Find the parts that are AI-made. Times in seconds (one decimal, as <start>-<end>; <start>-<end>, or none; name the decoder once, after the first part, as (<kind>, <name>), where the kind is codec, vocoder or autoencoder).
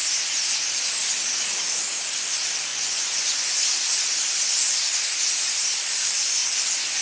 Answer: 2.7-3.6 (vocoder, Vocos)